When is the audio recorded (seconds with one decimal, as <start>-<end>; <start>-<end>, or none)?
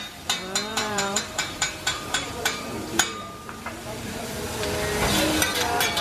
0.0-0.7; 4.2-6.0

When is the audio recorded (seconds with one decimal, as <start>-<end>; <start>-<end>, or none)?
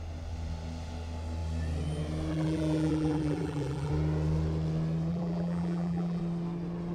0.0-2.3; 3.9-5.1; 6.2-6.9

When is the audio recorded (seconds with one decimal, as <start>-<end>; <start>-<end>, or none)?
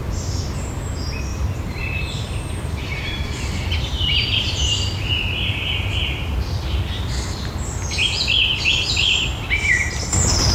0.0-1.3; 5.9-10.5